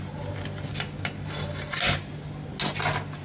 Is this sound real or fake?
real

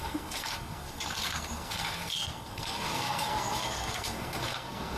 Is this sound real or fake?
fake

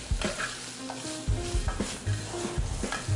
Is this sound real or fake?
real